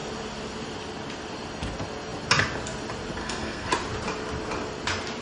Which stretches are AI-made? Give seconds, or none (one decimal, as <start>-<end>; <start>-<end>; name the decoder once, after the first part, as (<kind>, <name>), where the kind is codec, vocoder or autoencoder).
3.2-3.7 (codec, SNAC)